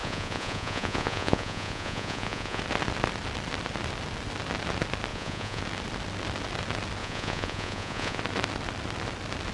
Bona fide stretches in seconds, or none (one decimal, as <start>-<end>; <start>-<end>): 2.6-5.1; 5.6-7.0; 8.2-9.5